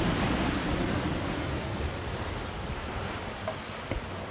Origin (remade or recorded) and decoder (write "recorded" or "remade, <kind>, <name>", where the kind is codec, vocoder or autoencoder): recorded